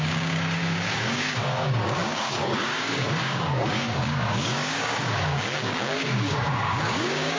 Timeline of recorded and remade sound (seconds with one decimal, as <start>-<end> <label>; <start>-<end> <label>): 0.0-7.4 remade